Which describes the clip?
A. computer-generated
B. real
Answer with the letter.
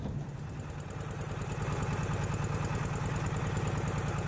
B